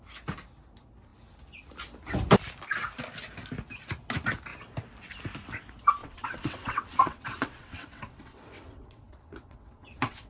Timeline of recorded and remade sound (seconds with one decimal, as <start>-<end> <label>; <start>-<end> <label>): 0.0-6.0 recorded; 6.0-10.3 remade